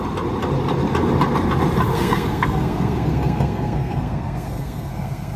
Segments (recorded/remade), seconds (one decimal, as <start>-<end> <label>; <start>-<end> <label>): 0.0-1.9 recorded; 1.9-5.4 remade

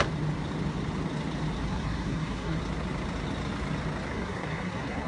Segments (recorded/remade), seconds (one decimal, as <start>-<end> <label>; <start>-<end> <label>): 0.0-1.7 recorded; 1.7-2.6 remade; 2.6-4.1 recorded; 4.1-5.1 remade